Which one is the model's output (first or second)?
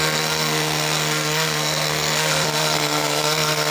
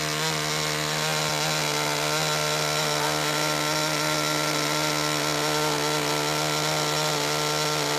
first